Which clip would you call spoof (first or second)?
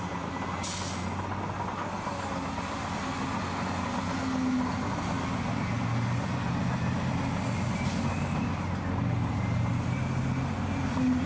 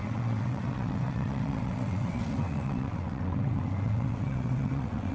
second